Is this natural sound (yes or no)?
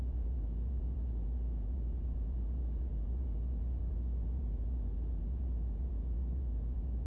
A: no